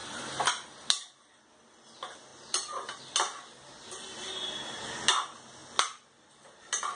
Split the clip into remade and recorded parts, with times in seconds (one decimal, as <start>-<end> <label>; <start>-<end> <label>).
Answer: 0.0-2.3 recorded; 2.3-3.0 remade; 3.0-7.0 recorded